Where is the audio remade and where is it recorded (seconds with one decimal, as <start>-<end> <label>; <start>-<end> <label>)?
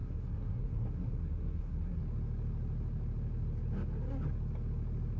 0.0-2.0 remade; 2.0-5.2 recorded